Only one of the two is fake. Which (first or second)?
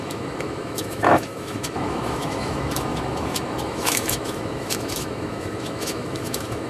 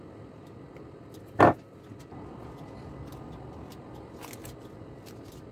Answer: first